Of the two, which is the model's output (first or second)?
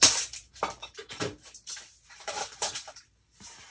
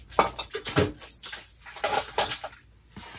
first